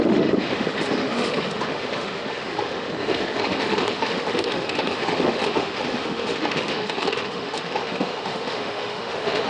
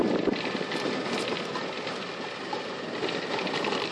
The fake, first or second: first